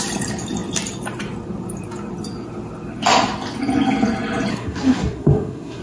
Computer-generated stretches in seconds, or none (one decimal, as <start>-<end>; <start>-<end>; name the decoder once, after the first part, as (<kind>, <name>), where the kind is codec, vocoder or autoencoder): 4.5-5.8 (codec, SNAC)